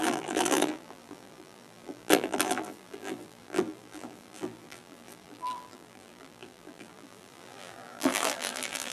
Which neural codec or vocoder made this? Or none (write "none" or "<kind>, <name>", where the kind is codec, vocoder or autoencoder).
vocoder, BigVGAN v2